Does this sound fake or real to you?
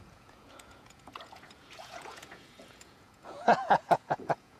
fake